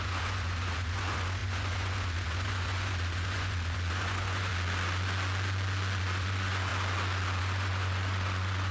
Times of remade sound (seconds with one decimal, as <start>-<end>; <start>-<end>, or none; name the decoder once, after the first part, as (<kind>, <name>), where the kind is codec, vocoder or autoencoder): 0.0-4.5 (vocoder, Vocos); 6.0-6.7; 7.4-8.7